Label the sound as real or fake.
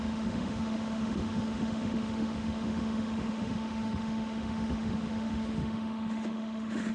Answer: fake